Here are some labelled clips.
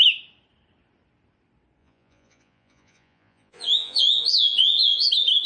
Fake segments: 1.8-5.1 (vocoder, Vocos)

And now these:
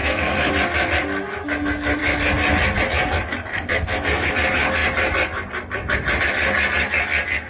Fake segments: 0.0-0.5 (codec, SNAC); 3.5-4.3

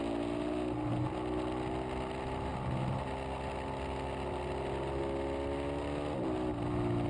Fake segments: none

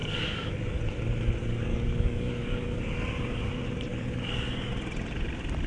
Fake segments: 0.0-0.8 (codec, DAC); 1.4-3.5; 3.9-4.7

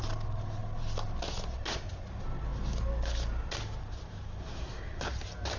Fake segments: 4.4-5.0 (codec, SNAC)